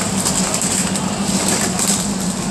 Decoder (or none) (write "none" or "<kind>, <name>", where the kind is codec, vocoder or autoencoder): none